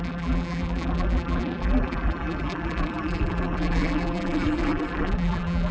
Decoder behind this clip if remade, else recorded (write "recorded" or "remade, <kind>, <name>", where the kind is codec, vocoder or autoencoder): remade, vocoder, BigVGAN v2